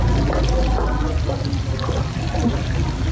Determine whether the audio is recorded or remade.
recorded